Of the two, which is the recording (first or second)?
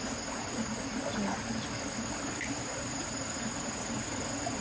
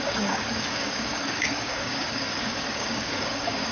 first